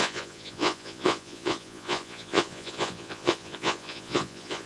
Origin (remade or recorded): remade